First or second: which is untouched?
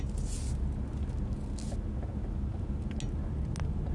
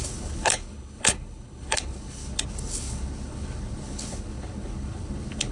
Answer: first